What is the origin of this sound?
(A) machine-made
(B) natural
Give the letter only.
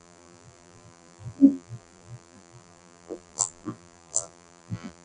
A